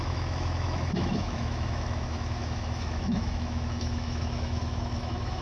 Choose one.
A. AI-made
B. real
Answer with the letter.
A